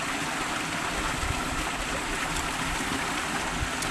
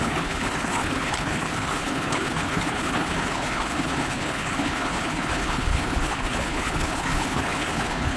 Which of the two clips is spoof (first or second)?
second